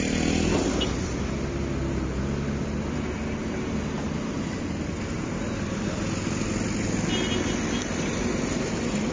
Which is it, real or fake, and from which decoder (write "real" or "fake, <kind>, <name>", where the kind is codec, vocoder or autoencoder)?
real